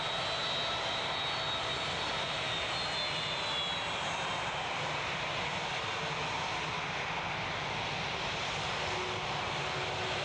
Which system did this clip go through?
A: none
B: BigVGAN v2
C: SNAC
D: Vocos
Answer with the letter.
A